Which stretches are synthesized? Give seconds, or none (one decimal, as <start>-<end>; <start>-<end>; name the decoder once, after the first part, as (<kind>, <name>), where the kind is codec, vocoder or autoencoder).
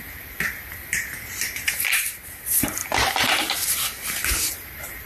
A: 0.0-5.1 (vocoder, BigVGAN v2)